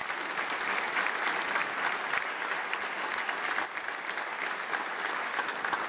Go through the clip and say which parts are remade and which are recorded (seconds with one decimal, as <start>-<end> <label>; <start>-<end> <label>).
0.0-5.9 recorded